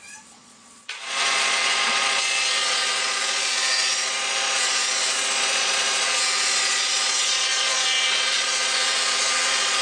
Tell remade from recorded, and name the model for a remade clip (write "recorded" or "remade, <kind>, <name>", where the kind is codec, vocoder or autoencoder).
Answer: remade, vocoder, Vocos